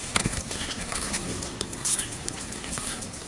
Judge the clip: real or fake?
fake